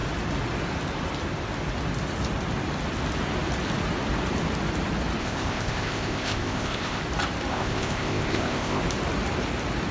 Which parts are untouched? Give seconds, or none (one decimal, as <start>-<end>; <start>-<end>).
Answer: 0.0-5.2; 7.0-7.5; 8.8-9.9